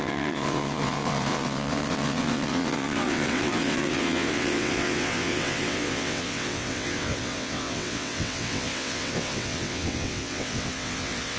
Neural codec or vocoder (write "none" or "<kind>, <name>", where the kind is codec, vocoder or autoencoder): vocoder, WaveNeXt